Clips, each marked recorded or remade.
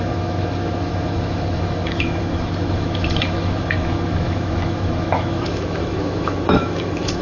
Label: remade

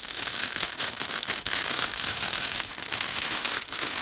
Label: remade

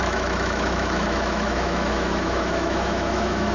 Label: remade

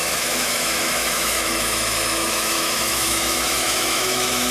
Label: remade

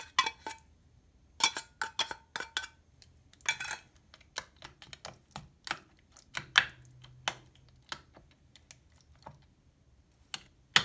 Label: recorded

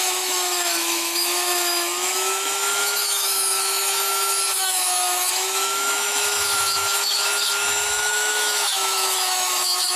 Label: remade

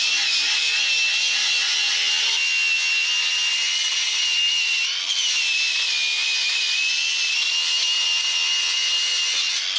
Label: recorded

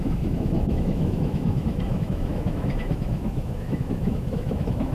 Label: remade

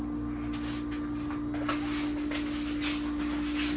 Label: recorded